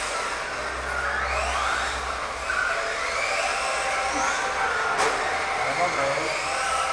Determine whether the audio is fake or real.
real